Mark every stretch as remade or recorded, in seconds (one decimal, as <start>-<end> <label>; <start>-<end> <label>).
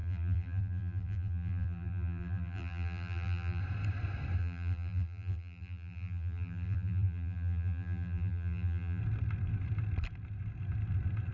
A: 0.0-3.6 remade; 3.6-4.4 recorded; 4.4-9.0 remade; 9.0-11.3 recorded